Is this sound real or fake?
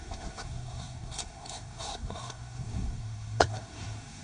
fake